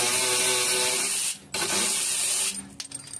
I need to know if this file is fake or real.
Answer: real